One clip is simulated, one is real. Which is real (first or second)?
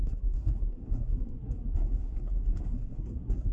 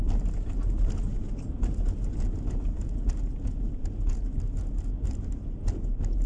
second